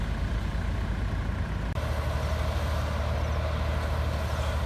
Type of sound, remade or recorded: recorded